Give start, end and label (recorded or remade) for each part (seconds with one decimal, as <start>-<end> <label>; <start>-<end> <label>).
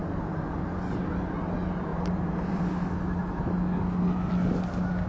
0.0-1.9 recorded; 1.9-2.6 remade; 2.6-5.1 recorded